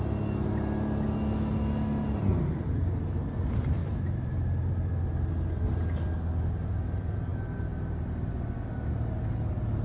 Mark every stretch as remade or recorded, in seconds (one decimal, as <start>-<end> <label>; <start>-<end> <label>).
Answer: 0.0-2.3 recorded; 2.3-2.8 remade; 2.8-3.8 recorded; 3.8-4.9 remade; 4.9-9.8 recorded